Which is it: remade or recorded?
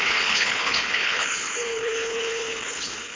remade